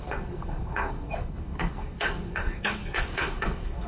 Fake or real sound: fake